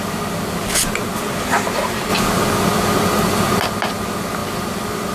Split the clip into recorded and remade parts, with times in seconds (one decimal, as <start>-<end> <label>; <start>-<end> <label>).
0.0-5.1 recorded